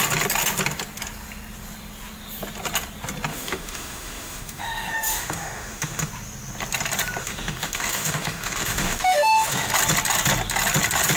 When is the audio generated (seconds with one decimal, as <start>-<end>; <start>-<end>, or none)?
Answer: 3.3-6.1; 7.2-9.7